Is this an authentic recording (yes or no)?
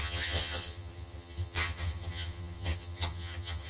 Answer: no